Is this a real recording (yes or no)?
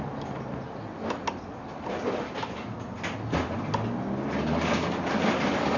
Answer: yes